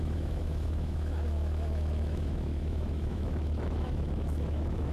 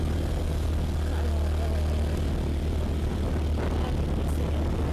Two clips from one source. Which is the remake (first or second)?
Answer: first